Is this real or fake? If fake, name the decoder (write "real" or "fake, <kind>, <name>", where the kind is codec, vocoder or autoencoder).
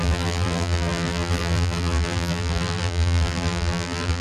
fake, vocoder, BigVGAN v2